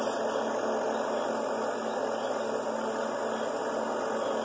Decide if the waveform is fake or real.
real